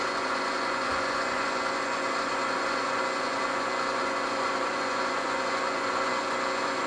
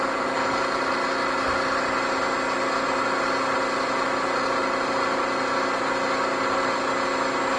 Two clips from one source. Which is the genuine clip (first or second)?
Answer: second